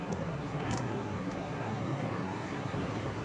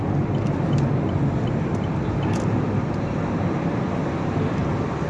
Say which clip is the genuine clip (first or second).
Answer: second